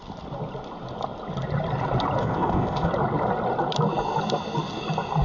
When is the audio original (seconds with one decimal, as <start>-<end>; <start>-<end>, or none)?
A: 0.0-2.2; 2.9-5.2